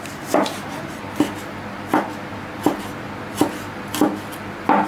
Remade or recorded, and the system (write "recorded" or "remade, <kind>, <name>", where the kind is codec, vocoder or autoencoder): recorded